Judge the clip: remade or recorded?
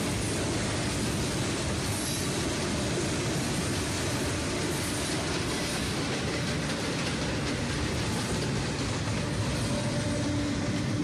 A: recorded